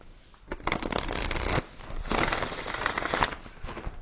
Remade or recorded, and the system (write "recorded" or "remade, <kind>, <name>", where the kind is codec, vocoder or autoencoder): recorded